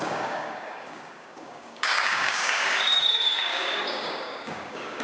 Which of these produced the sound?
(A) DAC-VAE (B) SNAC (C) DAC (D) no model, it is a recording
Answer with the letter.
C